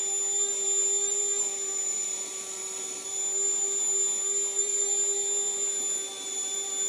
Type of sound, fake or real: fake